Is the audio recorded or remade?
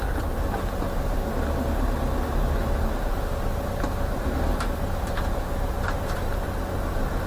recorded